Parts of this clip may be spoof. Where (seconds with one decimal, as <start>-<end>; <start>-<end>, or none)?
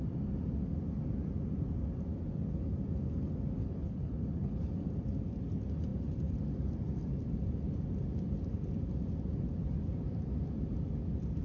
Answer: 3.6-4.7